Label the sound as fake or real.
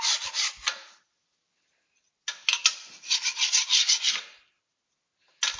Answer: real